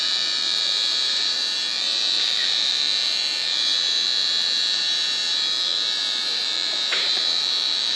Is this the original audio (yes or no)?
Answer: no